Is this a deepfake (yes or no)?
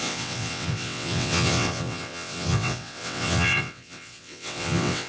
yes